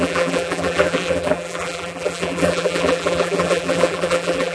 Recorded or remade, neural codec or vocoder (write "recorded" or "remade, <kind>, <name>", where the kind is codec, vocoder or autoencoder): remade, vocoder, BigVGAN v2